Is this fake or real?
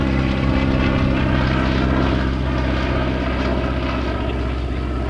real